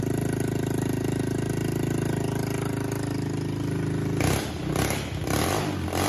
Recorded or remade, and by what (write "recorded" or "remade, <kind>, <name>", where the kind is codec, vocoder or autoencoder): recorded